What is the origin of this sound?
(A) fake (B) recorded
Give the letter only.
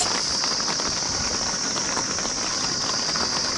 B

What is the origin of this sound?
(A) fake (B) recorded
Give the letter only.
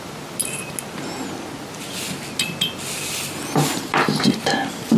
B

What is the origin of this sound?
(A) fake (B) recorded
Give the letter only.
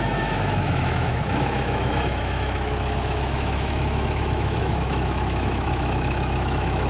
A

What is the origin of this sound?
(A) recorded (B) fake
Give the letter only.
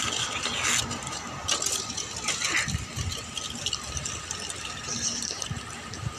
A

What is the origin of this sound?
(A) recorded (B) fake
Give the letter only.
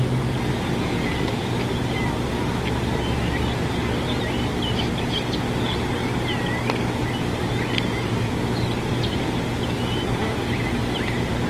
A